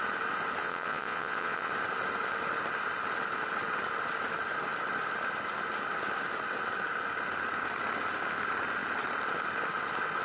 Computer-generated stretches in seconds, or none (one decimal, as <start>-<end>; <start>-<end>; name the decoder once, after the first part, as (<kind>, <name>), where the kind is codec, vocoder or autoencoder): 0.6-1.7 (vocoder, Vocos)